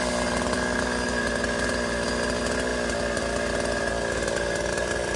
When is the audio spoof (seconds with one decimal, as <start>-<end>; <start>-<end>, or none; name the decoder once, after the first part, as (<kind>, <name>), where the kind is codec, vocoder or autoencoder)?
none

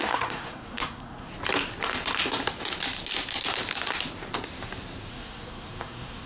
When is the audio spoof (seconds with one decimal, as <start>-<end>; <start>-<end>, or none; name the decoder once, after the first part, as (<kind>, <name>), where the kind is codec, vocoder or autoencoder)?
0.0-1.3 (codec, SNAC); 5.1-6.3

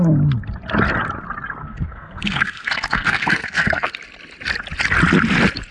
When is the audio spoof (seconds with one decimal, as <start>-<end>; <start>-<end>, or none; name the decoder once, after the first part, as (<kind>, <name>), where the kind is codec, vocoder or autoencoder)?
1.6-3.9 (codec, SNAC)

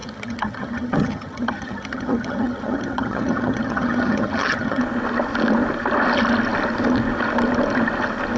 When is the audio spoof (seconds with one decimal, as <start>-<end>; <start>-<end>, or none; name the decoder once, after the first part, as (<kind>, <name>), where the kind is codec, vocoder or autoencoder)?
0.0-4.8 (vocoder, HiFi-GAN)

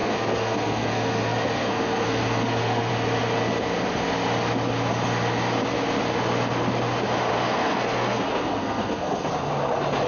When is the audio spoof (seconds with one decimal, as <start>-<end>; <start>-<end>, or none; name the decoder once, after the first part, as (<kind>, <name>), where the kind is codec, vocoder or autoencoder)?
0.0-2.9 (codec, SNAC); 7.3-9.3

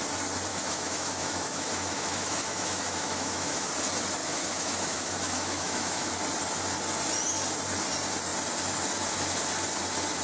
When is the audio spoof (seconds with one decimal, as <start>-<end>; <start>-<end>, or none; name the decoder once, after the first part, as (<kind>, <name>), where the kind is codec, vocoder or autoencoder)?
0.5-3.7 (autoencoder, DAC-VAE); 4.2-6.1

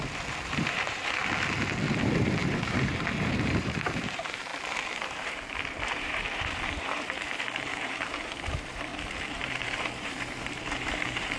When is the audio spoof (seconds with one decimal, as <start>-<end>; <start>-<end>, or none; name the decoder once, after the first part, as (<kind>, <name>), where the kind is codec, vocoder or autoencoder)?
0.0-1.2 (vocoder, BigVGAN v2); 1.9-11.4